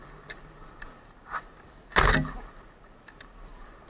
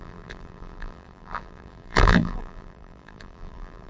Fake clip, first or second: second